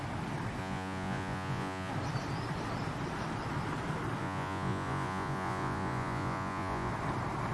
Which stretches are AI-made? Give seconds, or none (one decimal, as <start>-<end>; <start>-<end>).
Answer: 0.6-1.9; 4.2-6.9